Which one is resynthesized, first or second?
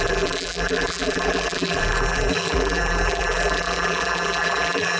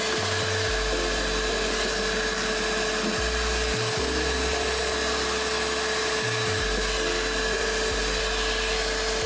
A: first